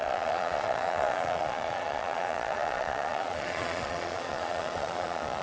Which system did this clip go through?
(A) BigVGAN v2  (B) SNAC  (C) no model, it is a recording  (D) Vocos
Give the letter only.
D